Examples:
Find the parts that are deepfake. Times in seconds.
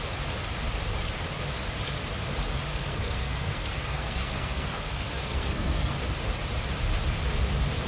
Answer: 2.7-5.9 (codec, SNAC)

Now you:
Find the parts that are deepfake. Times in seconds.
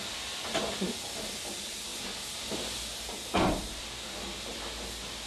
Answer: none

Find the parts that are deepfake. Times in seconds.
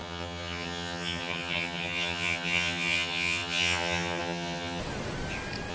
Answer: 0.0-4.8 (vocoder, HiFi-GAN)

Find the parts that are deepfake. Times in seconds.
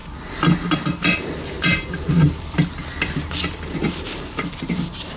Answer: none